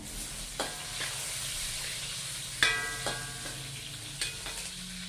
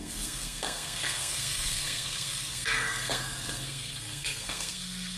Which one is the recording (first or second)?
first